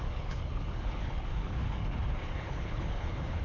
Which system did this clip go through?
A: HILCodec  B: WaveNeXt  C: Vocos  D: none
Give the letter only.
A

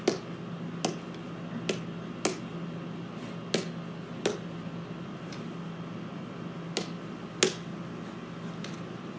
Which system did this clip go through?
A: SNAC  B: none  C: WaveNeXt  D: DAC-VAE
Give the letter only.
B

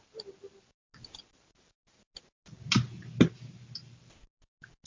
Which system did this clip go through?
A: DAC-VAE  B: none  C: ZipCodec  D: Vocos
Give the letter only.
B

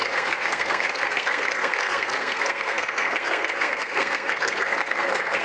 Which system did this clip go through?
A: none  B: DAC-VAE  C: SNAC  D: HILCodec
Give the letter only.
C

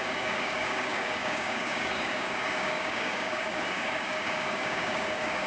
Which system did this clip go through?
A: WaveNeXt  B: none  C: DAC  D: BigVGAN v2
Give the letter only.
C